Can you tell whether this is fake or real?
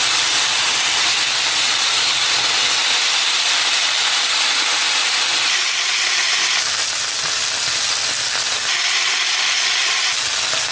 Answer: real